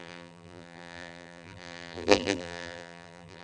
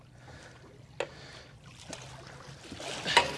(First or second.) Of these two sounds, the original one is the second